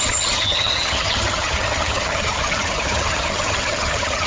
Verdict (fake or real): fake